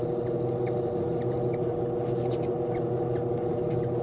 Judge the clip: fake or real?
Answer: real